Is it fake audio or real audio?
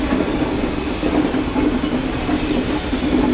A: real